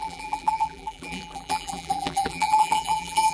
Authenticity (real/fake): fake